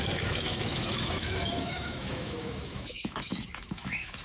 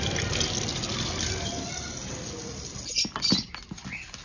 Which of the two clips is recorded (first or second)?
second